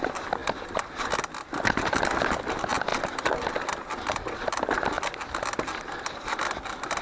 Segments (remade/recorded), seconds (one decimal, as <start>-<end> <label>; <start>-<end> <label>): 0.0-7.0 recorded